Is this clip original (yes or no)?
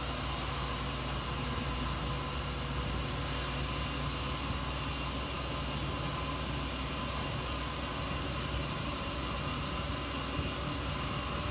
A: yes